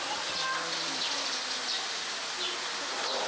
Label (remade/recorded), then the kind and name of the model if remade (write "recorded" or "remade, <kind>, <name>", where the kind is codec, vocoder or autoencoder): recorded